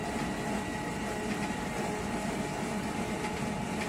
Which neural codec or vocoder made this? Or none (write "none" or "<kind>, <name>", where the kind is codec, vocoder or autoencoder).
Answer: none